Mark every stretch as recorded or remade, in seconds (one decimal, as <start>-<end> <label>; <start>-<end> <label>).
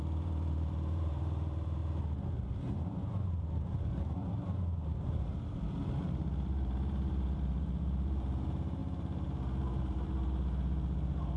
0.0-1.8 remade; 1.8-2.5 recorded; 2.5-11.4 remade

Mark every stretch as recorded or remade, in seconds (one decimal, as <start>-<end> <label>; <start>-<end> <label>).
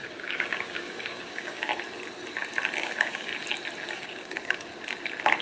0.0-1.7 remade; 1.7-2.8 recorded; 2.8-3.3 remade; 3.3-3.9 recorded; 3.9-4.7 remade; 4.7-5.4 recorded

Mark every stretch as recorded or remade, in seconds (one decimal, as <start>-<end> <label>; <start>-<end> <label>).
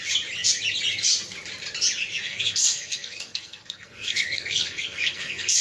0.0-2.1 recorded; 2.1-5.6 remade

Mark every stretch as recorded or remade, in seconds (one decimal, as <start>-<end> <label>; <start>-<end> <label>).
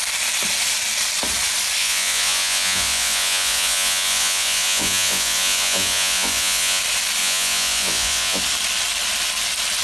0.0-1.8 recorded; 1.8-6.8 remade; 6.8-7.2 recorded; 7.2-8.4 remade; 8.4-9.8 recorded